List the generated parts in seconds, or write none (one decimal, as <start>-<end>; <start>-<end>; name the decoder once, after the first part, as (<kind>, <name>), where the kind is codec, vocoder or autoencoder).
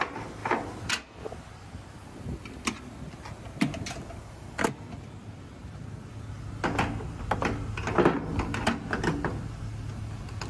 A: none